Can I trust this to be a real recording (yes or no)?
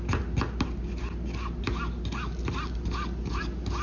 yes